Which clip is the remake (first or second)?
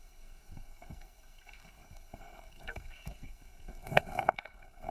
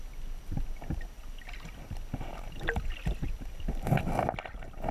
first